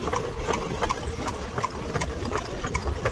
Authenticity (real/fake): real